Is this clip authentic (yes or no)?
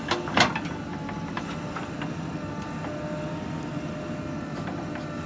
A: yes